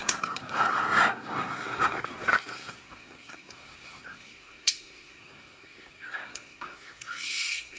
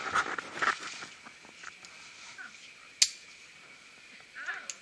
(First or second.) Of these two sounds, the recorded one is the second